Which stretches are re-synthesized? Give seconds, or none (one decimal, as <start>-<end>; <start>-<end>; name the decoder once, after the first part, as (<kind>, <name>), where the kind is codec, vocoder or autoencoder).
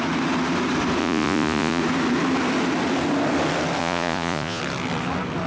1.0-1.8 (vocoder, Vocos); 3.8-4.6